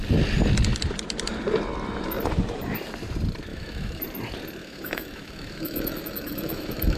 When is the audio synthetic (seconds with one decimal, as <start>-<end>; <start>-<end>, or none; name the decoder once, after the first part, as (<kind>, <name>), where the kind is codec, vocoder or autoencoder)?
3.5-4.0 (autoencoder, DAC-VAE); 4.6-7.0